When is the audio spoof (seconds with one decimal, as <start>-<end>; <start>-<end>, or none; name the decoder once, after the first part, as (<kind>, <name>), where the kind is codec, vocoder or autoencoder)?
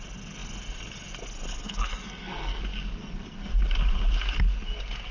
1.5-2.6 (codec, SNAC); 3.0-3.5